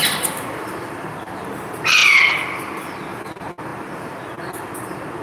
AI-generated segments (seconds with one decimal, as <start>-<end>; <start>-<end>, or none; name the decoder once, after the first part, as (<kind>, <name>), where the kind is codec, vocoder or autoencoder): none